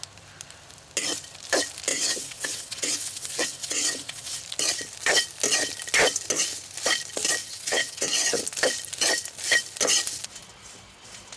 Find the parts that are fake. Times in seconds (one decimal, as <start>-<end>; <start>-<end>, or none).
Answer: 1.9-4.4; 7.4-8.4

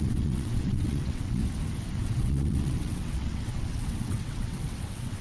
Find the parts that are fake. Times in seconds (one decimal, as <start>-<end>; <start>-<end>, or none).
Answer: 0.0-1.4; 1.9-5.2

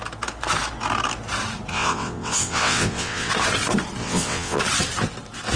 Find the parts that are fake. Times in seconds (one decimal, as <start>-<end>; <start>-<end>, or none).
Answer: 1.7-3.3; 4.0-4.6